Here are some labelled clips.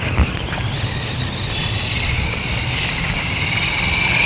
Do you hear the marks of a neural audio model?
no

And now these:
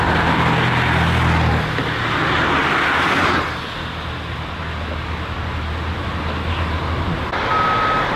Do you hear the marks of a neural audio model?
no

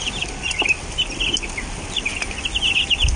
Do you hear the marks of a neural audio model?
no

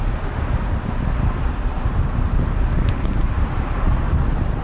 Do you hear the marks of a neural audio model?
no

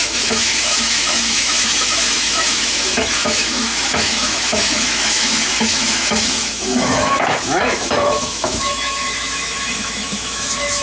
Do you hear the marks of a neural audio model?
yes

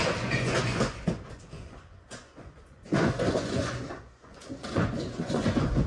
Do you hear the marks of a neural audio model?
yes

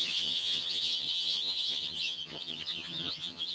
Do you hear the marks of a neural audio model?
yes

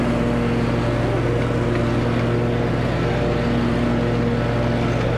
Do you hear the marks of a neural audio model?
no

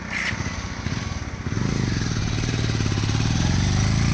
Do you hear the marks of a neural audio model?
no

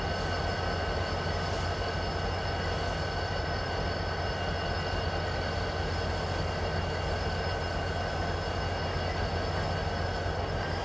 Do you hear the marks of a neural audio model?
no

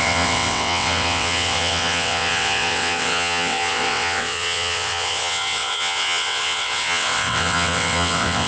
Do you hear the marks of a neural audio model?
yes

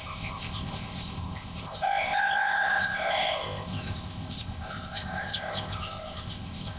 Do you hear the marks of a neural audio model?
yes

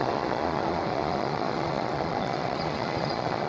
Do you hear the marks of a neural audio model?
yes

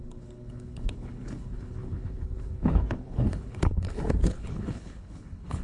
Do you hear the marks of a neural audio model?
yes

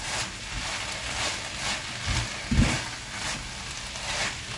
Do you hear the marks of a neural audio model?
no